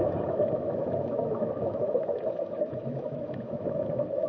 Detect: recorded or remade remade